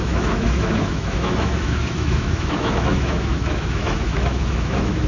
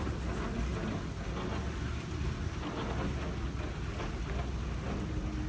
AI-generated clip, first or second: first